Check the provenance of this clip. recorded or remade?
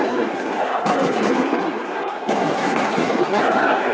remade